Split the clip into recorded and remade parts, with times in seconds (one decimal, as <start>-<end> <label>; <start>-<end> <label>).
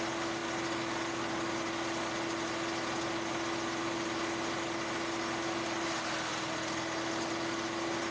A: 0.0-8.1 recorded